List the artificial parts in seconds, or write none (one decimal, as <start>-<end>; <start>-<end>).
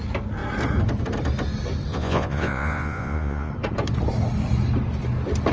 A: 1.9-3.5